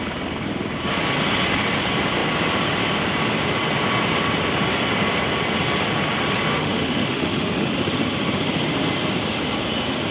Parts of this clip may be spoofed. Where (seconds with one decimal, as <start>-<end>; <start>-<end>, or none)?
6.5-7.7